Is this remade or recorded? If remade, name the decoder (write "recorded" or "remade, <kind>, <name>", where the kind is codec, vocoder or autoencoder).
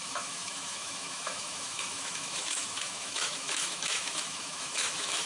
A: remade, autoencoder, DAC-VAE